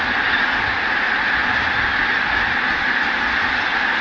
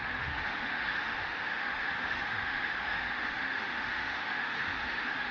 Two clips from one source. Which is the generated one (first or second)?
second